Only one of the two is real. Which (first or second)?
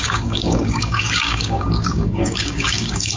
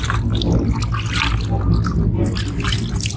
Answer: second